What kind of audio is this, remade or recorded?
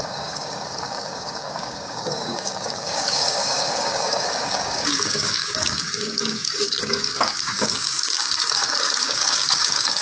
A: remade